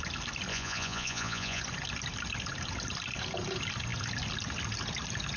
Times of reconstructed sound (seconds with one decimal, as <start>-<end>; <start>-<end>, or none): 0.5-1.6